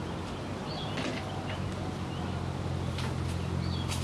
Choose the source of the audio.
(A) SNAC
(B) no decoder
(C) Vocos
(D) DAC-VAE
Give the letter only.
B